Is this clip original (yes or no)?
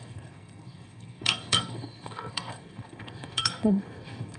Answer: no